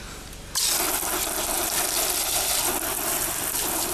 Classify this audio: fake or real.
real